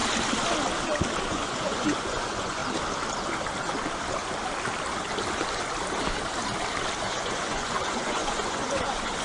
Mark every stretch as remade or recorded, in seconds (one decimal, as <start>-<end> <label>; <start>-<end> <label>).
0.0-1.3 recorded; 1.3-2.6 remade; 2.6-7.0 recorded; 7.0-9.2 remade